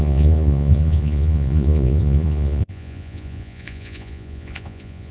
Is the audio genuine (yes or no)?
no